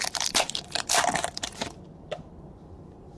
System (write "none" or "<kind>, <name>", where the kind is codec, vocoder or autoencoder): vocoder, BigVGAN v2